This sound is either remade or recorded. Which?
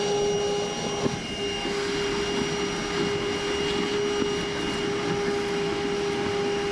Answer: recorded